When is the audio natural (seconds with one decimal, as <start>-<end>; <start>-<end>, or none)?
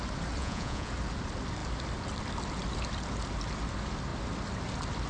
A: 0.0-0.4; 0.9-5.1